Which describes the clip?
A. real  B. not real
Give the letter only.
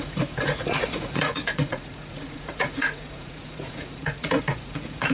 B